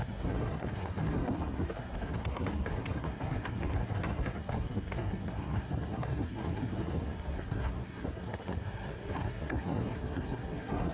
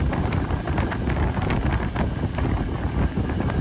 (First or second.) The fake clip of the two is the first